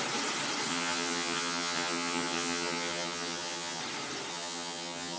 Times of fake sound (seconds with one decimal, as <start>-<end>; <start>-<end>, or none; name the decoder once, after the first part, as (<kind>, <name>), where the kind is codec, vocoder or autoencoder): 0.7-3.8 (vocoder, HiFi-GAN); 4.3-5.2